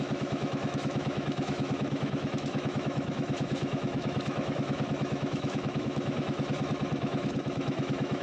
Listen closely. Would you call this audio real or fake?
fake